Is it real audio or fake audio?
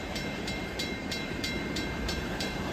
fake